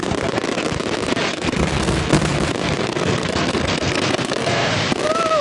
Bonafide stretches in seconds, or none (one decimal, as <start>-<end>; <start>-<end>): 0.0-1.3; 2.1-2.8; 4.7-5.4